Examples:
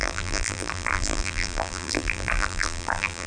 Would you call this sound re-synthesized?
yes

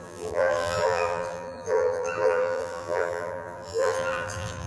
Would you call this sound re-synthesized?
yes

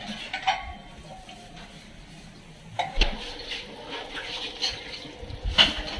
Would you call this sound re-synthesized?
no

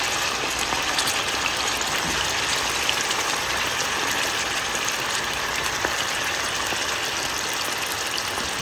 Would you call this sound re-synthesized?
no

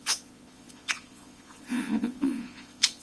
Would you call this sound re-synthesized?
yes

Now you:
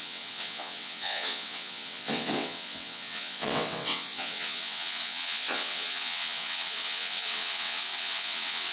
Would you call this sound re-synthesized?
yes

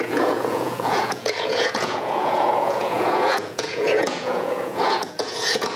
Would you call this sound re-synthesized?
yes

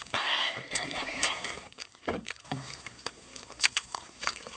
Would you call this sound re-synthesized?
yes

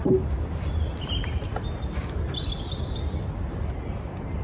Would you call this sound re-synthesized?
no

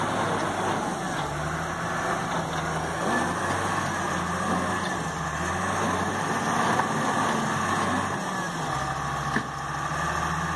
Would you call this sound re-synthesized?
no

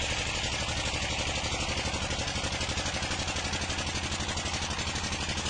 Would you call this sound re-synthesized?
no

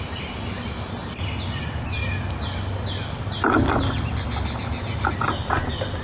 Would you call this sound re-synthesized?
no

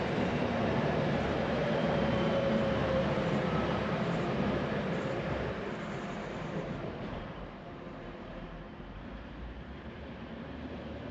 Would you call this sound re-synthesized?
yes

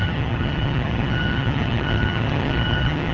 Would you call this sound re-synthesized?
yes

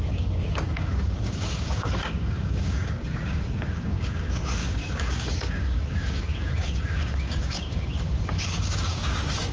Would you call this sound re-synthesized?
yes